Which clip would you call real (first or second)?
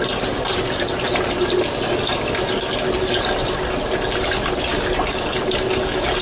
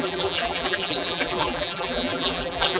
first